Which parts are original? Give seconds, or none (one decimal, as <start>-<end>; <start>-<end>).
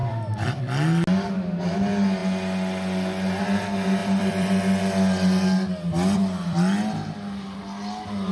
0.6-4.0; 4.6-8.3